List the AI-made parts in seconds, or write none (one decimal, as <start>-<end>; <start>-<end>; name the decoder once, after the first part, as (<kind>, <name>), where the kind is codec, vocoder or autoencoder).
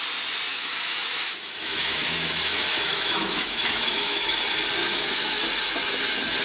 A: 0.5-4.3 (autoencoder, DAC-VAE); 4.8-5.4